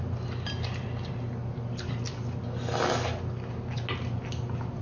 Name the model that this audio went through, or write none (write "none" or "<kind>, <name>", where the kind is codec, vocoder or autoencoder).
none